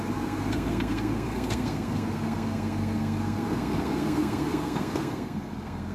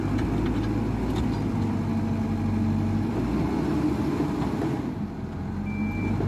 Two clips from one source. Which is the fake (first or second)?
first